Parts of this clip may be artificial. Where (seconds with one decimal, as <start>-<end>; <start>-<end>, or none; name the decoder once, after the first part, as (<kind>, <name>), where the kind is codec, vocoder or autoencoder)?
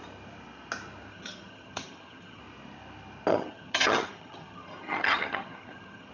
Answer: 1.1-2.4 (vocoder, HiFi-GAN); 3.3-6.1